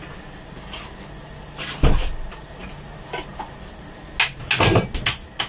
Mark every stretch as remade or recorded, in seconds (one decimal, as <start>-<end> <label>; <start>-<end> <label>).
0.0-5.5 recorded